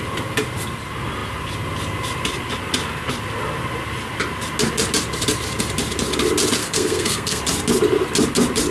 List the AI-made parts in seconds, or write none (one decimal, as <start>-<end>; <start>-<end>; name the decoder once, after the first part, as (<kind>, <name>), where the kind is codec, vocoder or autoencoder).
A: 6.6-7.4 (codec, SNAC)